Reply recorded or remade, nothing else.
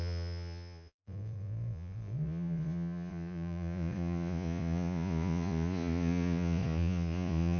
remade